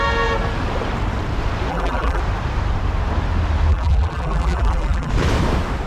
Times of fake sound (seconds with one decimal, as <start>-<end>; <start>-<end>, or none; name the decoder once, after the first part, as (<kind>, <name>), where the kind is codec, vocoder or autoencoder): 1.7-2.2 (vocoder, BigVGAN v2); 3.7-5.1